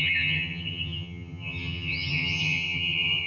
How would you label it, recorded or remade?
remade